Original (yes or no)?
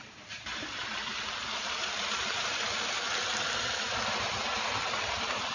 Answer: no